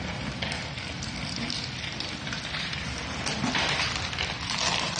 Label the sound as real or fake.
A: real